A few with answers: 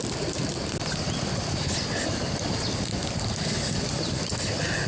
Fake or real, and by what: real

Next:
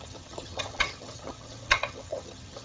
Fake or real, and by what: fake, vocoder, HiFi-GAN